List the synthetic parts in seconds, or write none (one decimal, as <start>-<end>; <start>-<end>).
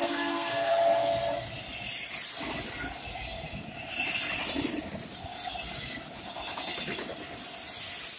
0.0-0.7